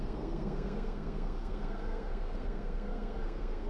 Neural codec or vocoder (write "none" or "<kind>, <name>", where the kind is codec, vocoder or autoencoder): codec, SNAC